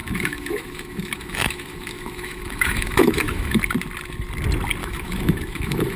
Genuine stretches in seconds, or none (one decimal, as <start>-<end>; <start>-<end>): 3.6-4.8